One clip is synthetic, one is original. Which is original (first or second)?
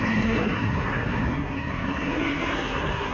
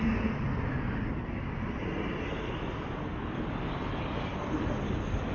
second